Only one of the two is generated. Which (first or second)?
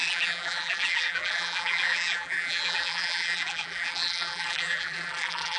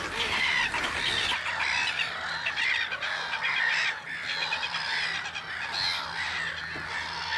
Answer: first